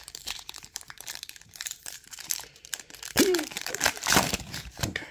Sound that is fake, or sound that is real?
fake